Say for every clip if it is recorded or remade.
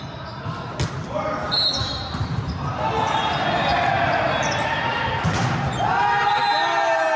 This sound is recorded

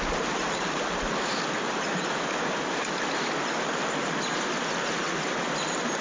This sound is recorded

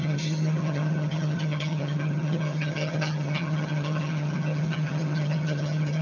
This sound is remade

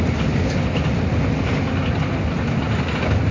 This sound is recorded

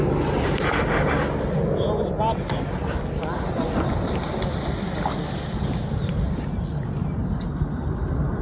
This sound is recorded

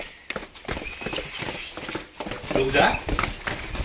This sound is recorded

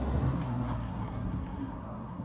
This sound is remade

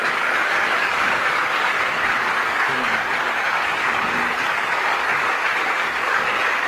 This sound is remade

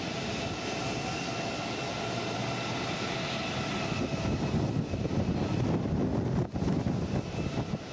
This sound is recorded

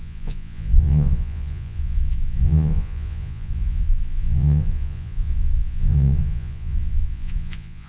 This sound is remade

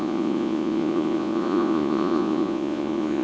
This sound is remade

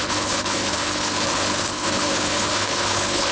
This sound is remade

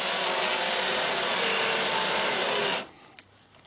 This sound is recorded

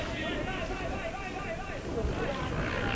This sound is recorded